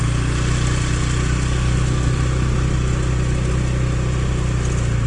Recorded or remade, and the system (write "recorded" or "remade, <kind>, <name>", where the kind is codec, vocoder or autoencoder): recorded